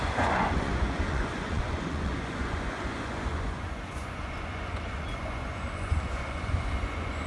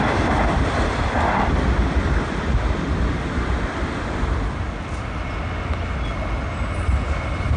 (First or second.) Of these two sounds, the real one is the second